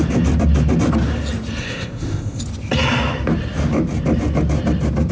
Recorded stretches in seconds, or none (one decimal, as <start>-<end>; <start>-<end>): 0.0-1.6; 2.4-5.1